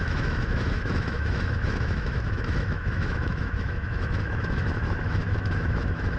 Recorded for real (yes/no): no